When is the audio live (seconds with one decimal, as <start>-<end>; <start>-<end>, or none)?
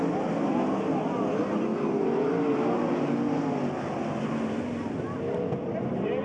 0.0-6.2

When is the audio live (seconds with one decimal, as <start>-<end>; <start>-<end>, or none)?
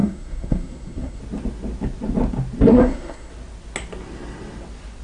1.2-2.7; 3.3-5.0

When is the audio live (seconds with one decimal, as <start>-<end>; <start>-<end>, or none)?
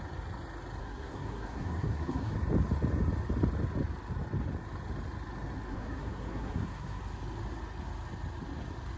0.0-0.8; 2.3-5.7; 7.0-9.0